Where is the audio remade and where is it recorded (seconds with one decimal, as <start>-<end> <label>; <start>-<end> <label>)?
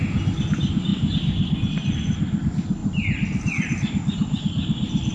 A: 0.0-0.9 recorded; 0.9-2.0 remade; 2.0-2.8 recorded; 2.8-5.1 remade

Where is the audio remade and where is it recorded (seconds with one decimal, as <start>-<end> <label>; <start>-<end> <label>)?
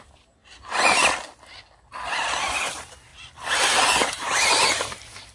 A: 0.0-0.4 remade; 0.4-2.5 recorded; 2.5-3.1 remade; 3.1-4.1 recorded; 4.1-5.3 remade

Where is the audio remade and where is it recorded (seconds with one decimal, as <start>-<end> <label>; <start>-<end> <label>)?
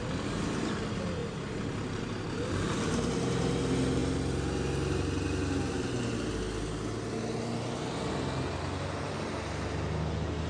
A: 0.0-10.5 recorded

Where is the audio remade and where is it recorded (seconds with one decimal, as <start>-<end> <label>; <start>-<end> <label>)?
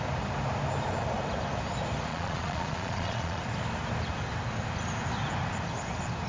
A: 0.0-2.1 recorded; 2.1-3.4 remade; 3.4-6.3 recorded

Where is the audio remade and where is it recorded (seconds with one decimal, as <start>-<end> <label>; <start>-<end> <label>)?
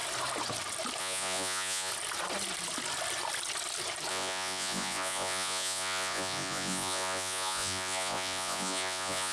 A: 0.0-1.0 recorded; 1.0-1.9 remade; 1.9-4.1 recorded; 4.1-9.3 remade